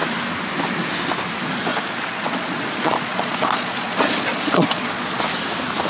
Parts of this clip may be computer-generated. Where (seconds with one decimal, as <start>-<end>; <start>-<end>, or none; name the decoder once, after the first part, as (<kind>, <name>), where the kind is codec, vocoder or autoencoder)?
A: 1.7-5.2 (vocoder, Vocos)